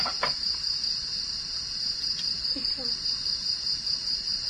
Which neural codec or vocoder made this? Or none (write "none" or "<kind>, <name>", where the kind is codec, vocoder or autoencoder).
none